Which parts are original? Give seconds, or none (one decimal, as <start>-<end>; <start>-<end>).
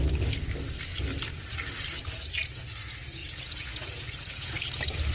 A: 0.0-3.2; 4.6-5.1